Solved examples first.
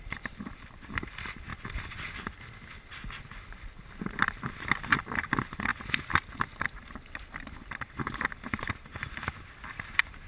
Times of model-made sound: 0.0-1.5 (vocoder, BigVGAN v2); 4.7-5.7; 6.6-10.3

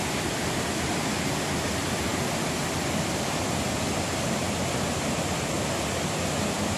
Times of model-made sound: none